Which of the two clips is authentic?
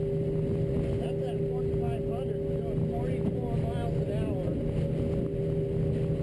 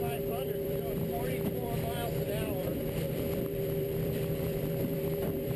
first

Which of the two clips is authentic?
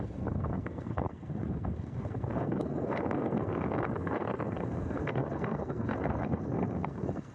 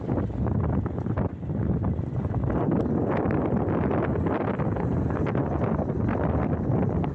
second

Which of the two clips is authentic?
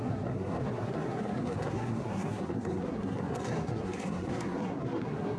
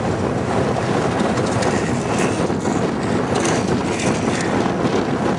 second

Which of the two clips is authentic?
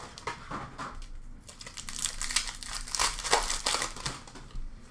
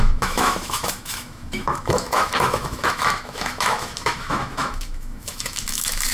first